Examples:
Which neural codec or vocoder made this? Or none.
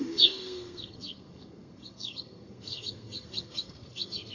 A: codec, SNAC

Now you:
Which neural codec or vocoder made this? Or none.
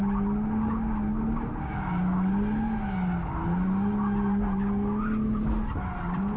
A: none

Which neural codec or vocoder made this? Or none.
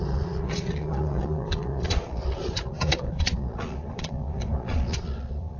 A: vocoder, Vocos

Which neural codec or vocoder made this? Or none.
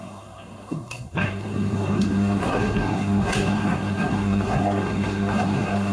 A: codec, SNAC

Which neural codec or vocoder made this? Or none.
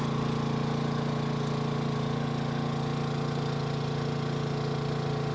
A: none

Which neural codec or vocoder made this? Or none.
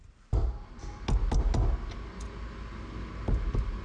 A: none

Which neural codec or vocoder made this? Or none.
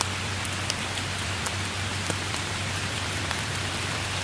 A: vocoder, BigVGAN v2